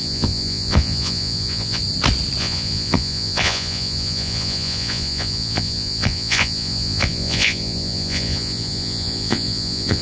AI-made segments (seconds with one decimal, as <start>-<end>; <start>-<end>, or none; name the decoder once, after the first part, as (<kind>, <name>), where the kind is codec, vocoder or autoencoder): 0.0-1.8 (vocoder, Vocos); 2.4-10.0

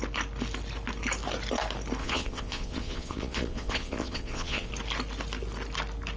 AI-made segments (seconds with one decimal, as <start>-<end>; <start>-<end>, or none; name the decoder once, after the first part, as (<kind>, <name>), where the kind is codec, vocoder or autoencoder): 2.0-4.7 (vocoder, Vocos)

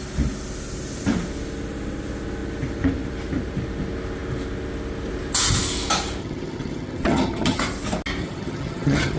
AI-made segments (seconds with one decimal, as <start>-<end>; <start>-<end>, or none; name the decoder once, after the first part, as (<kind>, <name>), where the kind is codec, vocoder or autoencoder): 6.2-7.6 (vocoder, HiFi-GAN); 8.2-9.2

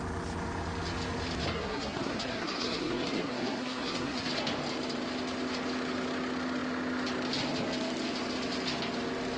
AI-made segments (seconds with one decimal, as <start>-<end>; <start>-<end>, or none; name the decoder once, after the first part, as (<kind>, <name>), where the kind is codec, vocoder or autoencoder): 1.5-4.3 (codec, SNAC)

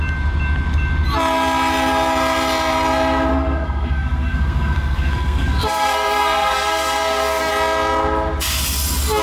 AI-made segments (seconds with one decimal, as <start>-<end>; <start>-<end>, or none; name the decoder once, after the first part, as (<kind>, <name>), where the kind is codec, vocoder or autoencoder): 3.3-7.5 (codec, SNAC)